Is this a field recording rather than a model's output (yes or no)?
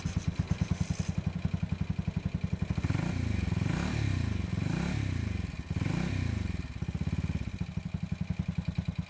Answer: yes